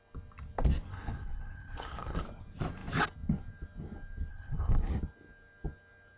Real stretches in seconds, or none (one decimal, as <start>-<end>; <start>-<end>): 0.0-0.9; 2.2-4.3; 4.9-6.2